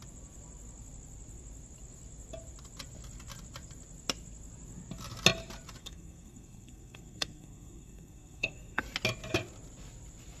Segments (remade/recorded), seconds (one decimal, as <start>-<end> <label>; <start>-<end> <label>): 0.0-5.8 recorded; 5.8-8.8 remade; 8.8-10.4 recorded